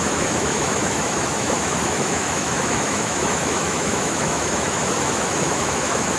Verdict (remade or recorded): remade